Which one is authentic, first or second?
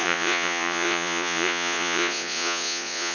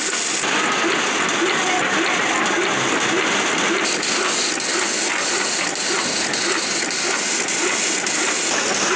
second